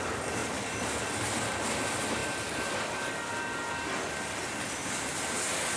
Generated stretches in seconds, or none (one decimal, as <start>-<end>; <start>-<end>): none